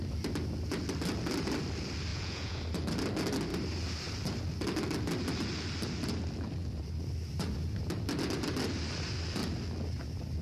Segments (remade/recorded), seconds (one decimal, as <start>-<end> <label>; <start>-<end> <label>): 0.0-2.1 recorded; 2.1-2.6 remade; 2.6-10.4 recorded